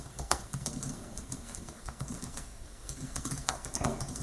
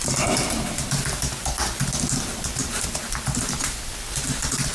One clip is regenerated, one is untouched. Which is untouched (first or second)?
second